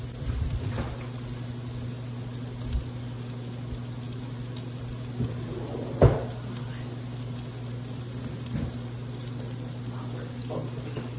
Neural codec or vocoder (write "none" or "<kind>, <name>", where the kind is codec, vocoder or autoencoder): none